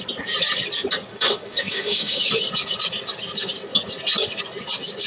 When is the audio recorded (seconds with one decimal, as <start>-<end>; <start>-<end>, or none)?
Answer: 0.0-1.1; 2.2-5.1